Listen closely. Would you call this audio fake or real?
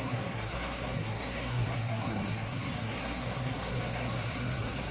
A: fake